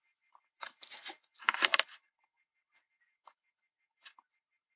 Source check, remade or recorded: recorded